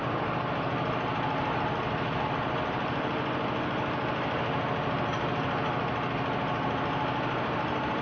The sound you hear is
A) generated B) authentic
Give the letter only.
B